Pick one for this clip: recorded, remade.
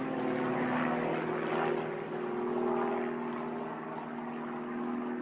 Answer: recorded